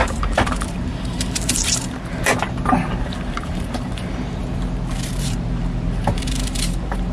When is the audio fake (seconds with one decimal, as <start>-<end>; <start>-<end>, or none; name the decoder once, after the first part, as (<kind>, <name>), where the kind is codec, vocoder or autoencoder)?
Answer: 0.0-2.3 (vocoder, BigVGAN v2); 2.9-4.4; 5.1-7.1